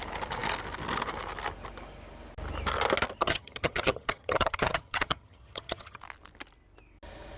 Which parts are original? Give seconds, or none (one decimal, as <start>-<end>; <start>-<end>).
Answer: 0.0-3.2; 6.0-7.4